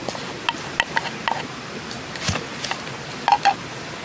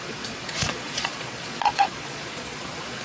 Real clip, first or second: first